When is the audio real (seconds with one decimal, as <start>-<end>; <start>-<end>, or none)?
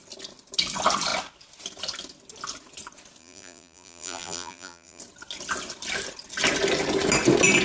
0.0-3.2; 5.0-7.6